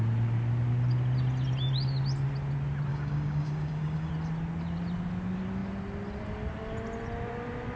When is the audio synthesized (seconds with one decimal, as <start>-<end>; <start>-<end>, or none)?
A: 2.9-4.1